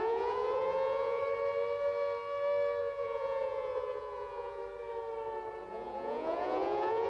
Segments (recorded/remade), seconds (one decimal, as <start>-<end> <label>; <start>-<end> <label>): 0.0-1.2 remade; 1.2-2.8 recorded; 2.8-4.6 remade; 4.6-5.7 recorded; 5.7-7.1 remade